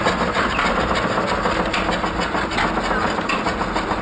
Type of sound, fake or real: real